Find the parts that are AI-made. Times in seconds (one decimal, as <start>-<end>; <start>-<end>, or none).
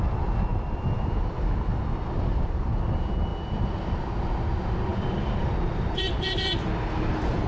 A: 4.9-6.8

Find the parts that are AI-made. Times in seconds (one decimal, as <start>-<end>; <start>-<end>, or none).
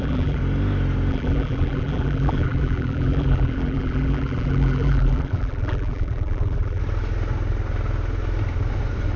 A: 0.0-0.4; 1.1-6.8